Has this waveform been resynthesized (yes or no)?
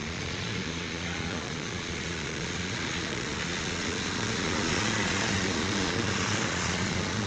yes